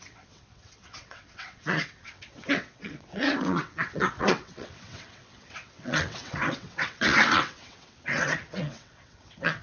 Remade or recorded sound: remade